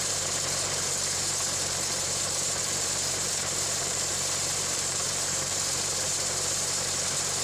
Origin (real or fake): fake